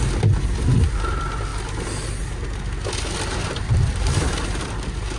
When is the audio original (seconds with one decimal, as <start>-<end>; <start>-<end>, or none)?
1.5-3.5

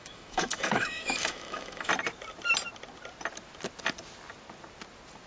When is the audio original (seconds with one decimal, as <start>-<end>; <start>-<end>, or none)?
1.9-5.3

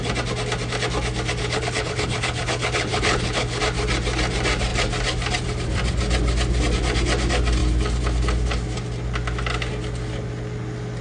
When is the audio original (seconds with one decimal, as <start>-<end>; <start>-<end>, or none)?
0.0-1.4; 3.6-11.0

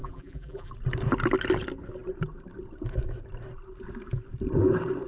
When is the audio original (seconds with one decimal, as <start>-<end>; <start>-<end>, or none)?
0.7-5.1